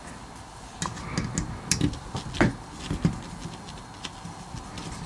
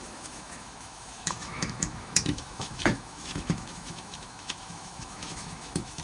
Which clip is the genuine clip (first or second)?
first